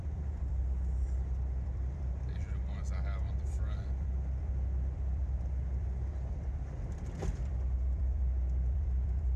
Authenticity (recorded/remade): remade